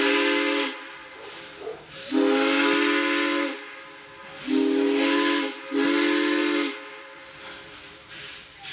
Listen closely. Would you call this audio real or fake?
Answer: real